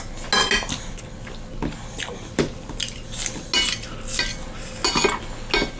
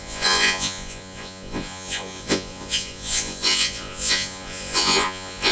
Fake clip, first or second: second